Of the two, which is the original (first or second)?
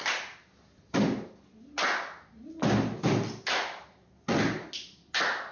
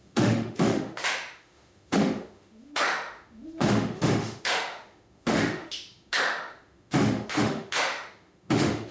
first